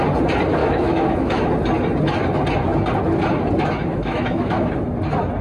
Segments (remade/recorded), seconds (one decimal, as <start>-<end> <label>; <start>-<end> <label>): 0.0-0.6 recorded; 0.6-1.5 remade; 1.5-3.9 recorded; 3.9-4.7 remade; 4.7-5.4 recorded